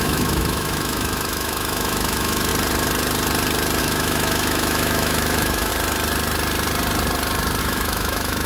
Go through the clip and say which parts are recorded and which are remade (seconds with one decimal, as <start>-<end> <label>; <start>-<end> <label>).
0.0-2.5 remade; 2.5-3.8 recorded; 3.8-5.7 remade; 5.7-7.6 recorded; 7.6-8.5 remade